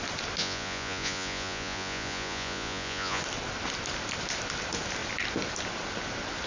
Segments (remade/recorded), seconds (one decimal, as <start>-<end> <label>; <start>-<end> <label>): 0.0-0.4 recorded; 0.4-3.2 remade; 3.2-6.5 recorded